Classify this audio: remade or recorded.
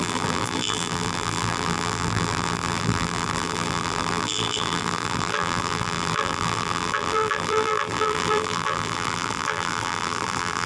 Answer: remade